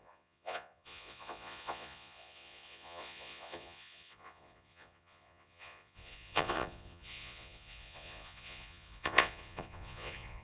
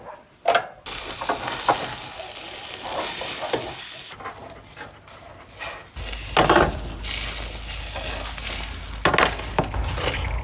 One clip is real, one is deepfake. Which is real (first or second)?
second